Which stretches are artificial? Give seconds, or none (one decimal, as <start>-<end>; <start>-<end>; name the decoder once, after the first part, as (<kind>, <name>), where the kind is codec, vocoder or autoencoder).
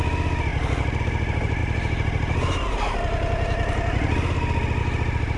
none